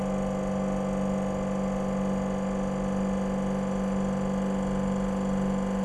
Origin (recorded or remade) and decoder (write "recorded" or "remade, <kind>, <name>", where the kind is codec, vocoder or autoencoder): recorded